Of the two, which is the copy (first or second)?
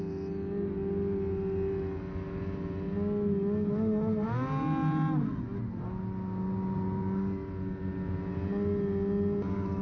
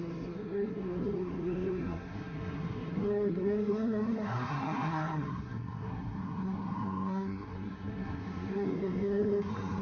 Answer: second